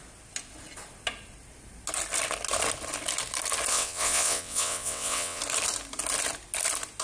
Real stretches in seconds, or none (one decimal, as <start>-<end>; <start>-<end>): 0.0-3.7; 5.4-7.0